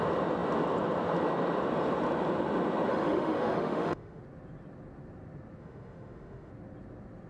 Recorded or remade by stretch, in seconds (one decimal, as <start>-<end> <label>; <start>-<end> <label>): 0.0-2.9 recorded; 2.9-4.2 remade; 4.2-5.6 recorded; 5.6-6.5 remade; 6.5-7.3 recorded